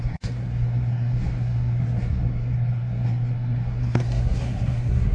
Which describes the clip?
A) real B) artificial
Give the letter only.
B